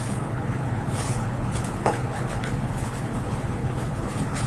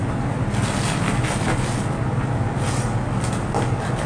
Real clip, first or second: second